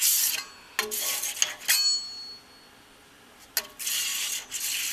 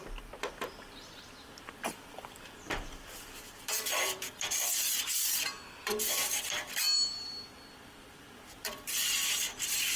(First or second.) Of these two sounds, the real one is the first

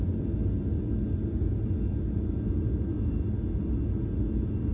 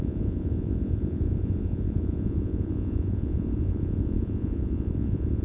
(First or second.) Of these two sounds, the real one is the first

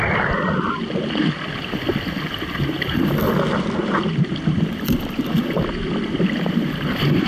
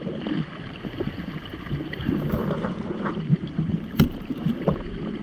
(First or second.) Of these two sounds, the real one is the first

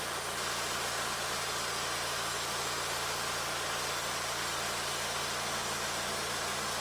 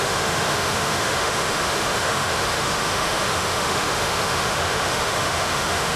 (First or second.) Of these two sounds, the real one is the first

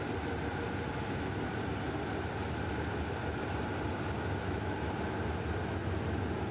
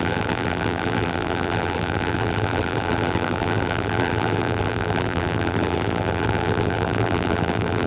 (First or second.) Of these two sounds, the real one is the first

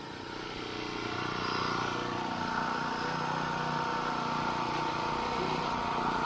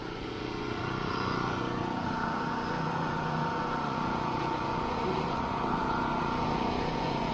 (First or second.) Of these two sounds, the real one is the first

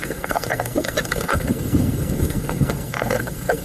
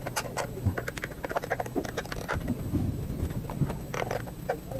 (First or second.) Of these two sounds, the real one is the second